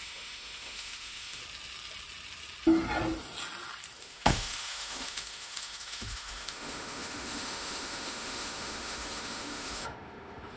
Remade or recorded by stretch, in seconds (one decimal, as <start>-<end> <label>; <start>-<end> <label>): 0.0-1.4 remade; 1.4-4.0 recorded; 4.0-10.6 remade